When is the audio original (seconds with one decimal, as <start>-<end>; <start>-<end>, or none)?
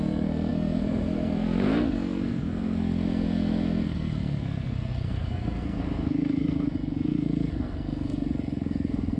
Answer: none